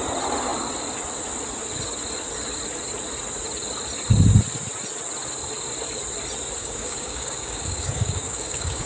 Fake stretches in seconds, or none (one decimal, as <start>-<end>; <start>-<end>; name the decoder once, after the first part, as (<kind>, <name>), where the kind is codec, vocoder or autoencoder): 6.6-8.9 (codec, DAC)